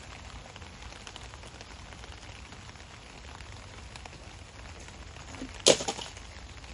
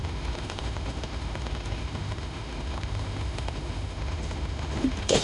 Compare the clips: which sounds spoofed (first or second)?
second